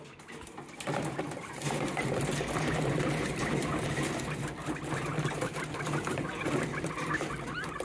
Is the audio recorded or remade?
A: remade